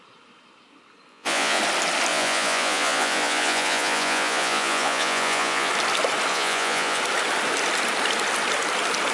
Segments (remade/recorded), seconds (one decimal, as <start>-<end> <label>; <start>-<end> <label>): 0.0-1.1 recorded; 1.1-1.6 remade; 1.6-2.1 recorded; 2.1-5.7 remade; 5.7-6.3 recorded; 6.3-7.0 remade; 7.0-9.1 recorded